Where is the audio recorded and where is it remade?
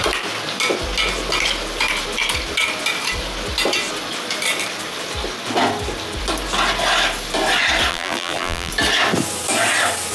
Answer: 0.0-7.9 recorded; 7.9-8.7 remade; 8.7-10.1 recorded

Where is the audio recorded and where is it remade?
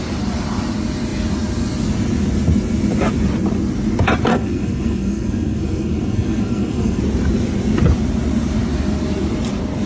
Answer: 0.0-4.3 recorded; 4.3-7.0 remade; 7.0-9.9 recorded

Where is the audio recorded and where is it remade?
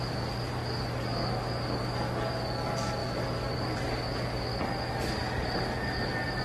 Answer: 0.0-3.0 recorded; 3.0-4.6 remade; 4.6-5.2 recorded; 5.2-6.4 remade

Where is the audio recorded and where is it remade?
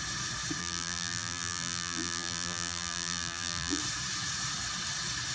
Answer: 0.0-0.6 recorded; 0.6-3.8 remade; 3.8-5.3 recorded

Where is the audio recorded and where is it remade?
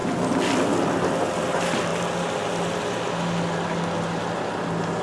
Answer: 0.0-5.0 recorded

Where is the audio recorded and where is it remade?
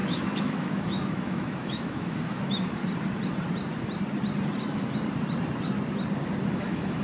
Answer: 0.0-2.8 remade; 2.8-6.5 recorded; 6.5-7.0 remade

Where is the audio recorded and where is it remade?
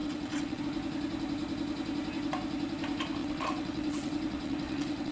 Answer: 0.0-0.6 remade; 0.6-3.2 recorded; 3.2-5.1 remade